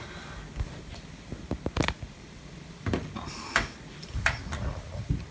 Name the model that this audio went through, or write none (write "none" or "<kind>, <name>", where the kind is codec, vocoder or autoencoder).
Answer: none